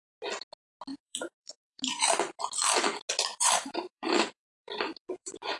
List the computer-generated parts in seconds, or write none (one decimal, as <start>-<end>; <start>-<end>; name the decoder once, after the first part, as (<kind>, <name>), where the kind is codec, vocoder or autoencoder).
0.9-2.4 (vocoder, BigVGAN v2); 3.3-5.6